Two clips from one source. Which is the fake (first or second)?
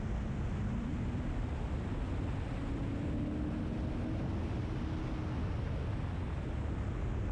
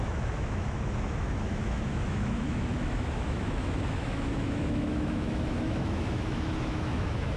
second